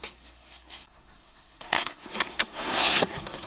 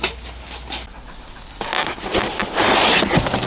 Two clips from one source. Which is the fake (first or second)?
first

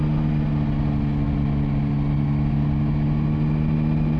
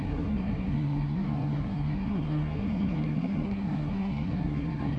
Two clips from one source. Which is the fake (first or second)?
second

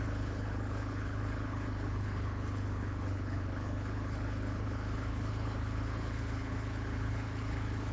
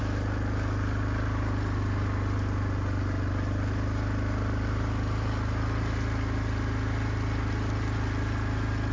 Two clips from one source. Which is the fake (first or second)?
first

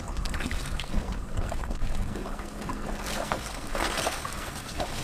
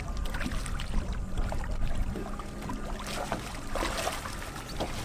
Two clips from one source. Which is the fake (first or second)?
first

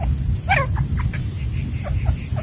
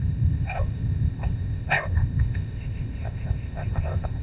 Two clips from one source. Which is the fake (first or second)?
second